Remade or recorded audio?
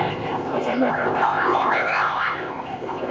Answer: remade